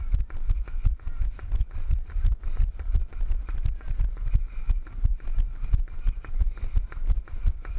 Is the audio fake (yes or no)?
no